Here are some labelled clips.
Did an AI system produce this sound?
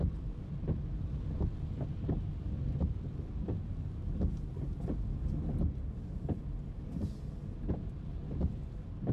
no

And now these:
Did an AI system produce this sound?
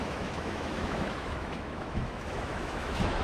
yes